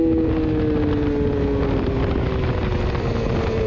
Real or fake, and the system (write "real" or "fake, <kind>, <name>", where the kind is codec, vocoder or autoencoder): real